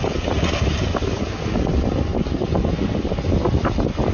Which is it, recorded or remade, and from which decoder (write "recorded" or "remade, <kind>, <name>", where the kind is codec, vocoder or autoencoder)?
recorded